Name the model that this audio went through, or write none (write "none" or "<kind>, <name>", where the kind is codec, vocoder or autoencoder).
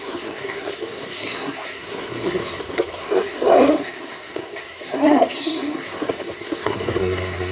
codec, SNAC